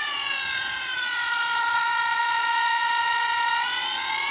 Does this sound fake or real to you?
fake